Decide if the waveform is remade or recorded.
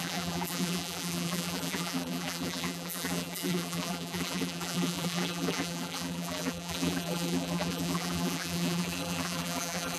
remade